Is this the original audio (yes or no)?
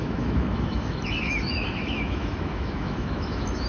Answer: no